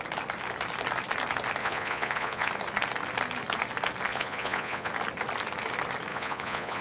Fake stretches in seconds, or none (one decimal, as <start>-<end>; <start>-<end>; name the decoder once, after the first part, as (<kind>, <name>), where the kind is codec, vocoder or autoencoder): 1.6-2.5 (vocoder, Vocos); 4.1-4.9; 6.1-6.8